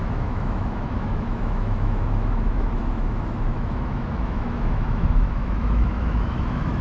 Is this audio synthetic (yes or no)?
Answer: yes